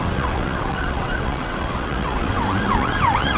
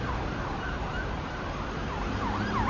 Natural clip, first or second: second